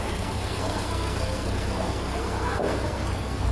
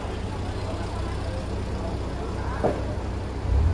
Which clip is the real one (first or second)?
second